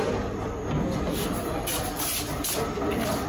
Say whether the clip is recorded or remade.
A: recorded